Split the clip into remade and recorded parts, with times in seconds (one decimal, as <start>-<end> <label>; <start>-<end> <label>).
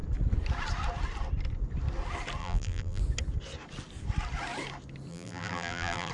0.0-2.4 recorded; 2.4-3.0 remade; 3.0-5.1 recorded; 5.1-6.1 remade